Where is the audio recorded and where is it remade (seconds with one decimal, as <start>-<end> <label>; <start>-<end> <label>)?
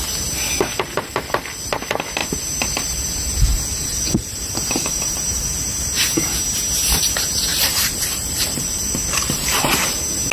0.0-2.2 recorded; 2.2-5.5 remade; 5.5-7.5 recorded; 7.5-9.9 remade; 9.9-10.3 recorded